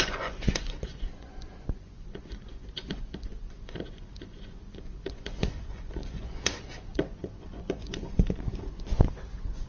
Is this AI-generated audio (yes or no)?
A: yes